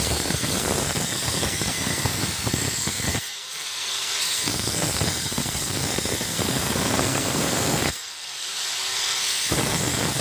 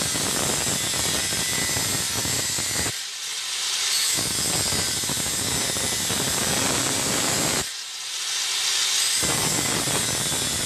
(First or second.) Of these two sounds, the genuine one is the second